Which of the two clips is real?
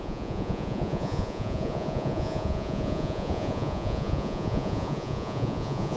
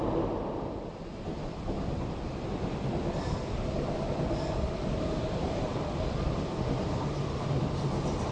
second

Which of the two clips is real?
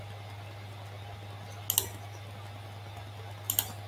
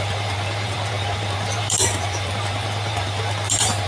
first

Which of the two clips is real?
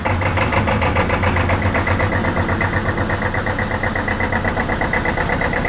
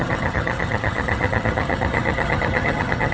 first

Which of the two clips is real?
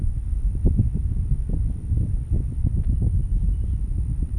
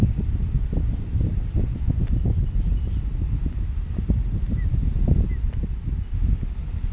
second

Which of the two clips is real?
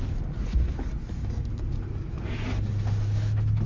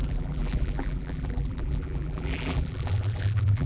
first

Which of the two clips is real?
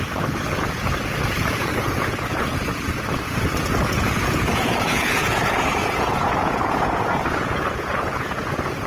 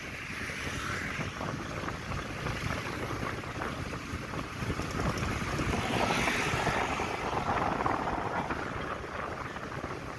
second